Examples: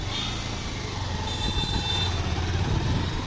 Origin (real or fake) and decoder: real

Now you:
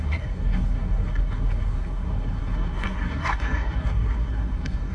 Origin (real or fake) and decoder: fake, codec, SNAC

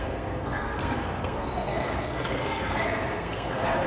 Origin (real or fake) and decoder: fake, codec, SNAC